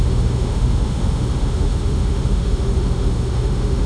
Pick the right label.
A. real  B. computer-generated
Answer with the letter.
B